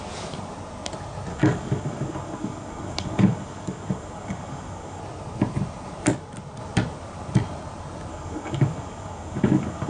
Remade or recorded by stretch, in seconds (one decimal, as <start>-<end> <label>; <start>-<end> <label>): 0.0-1.3 recorded; 1.3-5.0 remade; 5.0-8.1 recorded; 8.1-9.9 remade